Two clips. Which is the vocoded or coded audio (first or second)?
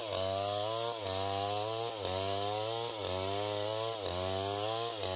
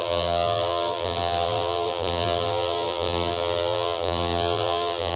second